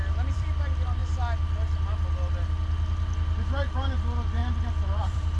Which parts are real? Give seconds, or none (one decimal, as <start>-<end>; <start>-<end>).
1.0-3.7; 4.4-5.0